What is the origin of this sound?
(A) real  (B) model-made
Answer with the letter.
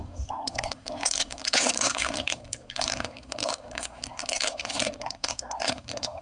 B